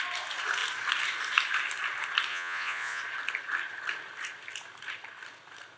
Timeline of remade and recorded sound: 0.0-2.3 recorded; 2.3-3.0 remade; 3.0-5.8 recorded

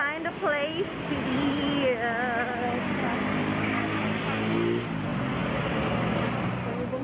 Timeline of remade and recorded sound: 0.0-7.0 recorded

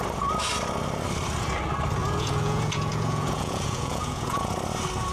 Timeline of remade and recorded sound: 0.0-2.0 recorded; 2.0-4.5 remade; 4.5-5.1 recorded

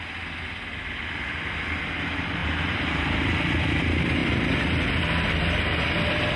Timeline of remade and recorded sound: 0.0-2.4 recorded; 2.4-3.2 remade; 3.2-6.4 recorded